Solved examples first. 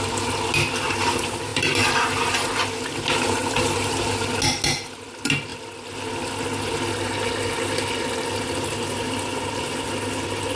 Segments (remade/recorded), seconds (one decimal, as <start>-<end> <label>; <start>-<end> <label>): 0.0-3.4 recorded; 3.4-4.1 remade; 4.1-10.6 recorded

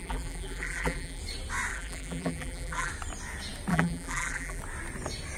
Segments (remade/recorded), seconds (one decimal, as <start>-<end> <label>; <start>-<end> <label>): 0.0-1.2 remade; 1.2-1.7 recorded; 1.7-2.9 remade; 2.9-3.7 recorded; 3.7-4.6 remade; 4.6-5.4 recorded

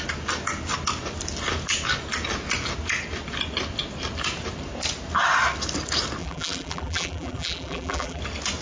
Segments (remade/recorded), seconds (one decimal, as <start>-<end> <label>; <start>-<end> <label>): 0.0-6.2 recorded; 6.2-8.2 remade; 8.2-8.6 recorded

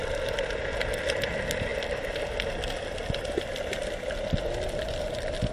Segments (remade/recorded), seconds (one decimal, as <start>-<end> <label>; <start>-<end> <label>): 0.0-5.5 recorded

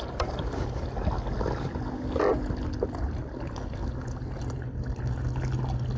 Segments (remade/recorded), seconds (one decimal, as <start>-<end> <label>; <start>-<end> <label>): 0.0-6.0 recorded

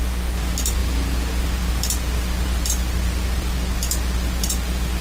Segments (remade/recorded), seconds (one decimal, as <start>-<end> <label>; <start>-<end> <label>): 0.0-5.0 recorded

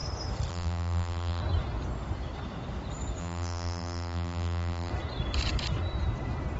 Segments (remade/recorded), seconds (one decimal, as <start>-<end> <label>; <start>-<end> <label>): 0.0-0.5 recorded; 0.5-1.4 remade; 1.4-3.2 recorded; 3.2-4.9 remade; 4.9-6.6 recorded